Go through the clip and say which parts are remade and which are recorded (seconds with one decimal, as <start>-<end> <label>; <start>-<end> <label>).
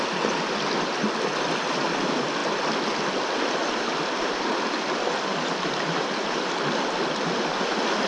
0.0-8.1 recorded